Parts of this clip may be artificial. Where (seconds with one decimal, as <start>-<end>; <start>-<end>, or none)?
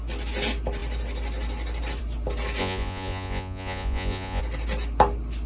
2.6-4.4